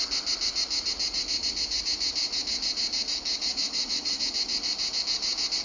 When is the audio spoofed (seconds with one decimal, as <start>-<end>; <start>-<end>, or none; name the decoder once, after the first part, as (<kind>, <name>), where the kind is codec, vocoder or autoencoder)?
3.5-4.2 (autoencoder, DAC-VAE)